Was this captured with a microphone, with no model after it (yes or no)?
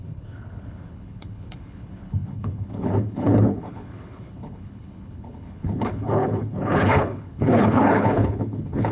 no